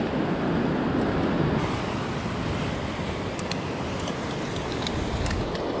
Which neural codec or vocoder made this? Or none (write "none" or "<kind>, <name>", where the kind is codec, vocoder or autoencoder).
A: none